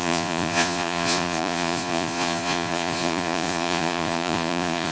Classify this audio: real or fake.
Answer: fake